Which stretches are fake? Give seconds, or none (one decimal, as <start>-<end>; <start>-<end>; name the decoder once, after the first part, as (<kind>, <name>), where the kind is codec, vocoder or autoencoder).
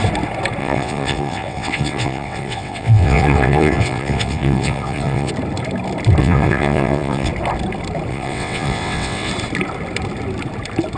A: 0.6-5.3 (vocoder, WaveNeXt); 6.2-7.3; 8.1-9.3